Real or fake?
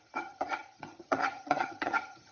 fake